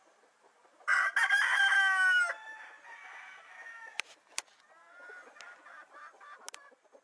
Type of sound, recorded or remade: recorded